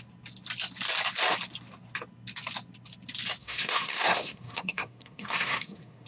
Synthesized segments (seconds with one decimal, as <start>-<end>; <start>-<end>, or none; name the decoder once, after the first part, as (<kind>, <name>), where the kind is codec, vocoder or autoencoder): 3.4-6.1 (codec, SNAC)